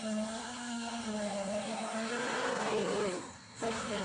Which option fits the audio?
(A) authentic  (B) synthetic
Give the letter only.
B